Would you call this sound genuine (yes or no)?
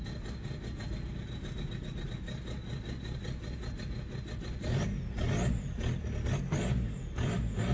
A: yes